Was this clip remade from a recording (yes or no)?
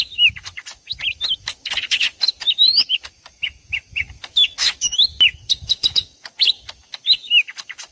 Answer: yes